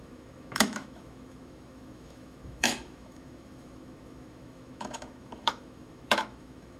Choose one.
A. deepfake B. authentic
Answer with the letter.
A